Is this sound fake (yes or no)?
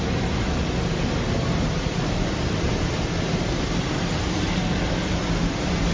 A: no